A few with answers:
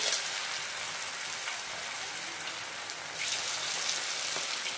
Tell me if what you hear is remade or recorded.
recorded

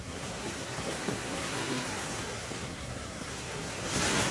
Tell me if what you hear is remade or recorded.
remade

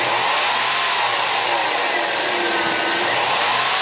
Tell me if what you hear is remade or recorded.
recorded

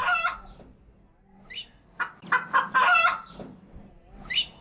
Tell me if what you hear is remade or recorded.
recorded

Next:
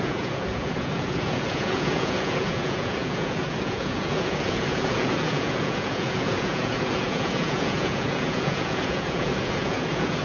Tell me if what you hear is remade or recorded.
remade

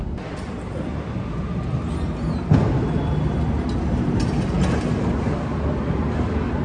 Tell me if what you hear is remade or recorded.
recorded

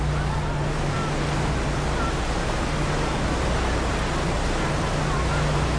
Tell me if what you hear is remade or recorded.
recorded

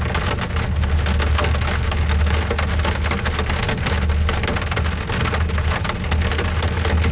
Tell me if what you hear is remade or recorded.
recorded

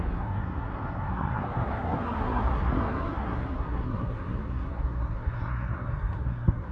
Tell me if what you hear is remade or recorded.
remade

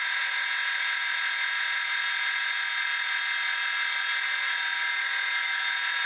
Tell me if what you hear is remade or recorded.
recorded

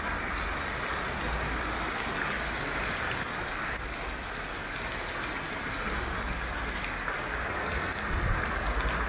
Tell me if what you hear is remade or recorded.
recorded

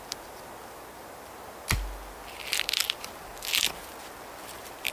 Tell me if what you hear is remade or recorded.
recorded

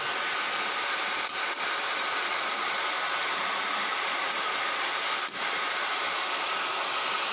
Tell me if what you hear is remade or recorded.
remade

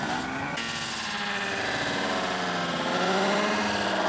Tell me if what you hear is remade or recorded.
recorded